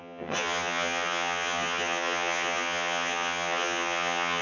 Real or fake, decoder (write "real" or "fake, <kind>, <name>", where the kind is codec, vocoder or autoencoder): fake, vocoder, HiFi-GAN